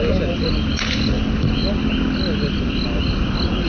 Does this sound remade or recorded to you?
recorded